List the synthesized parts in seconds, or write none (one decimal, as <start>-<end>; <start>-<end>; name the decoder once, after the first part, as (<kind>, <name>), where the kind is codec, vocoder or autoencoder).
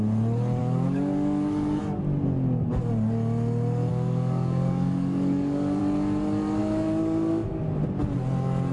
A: 0.6-1.8 (codec, DAC); 3.9-5.8; 6.6-7.6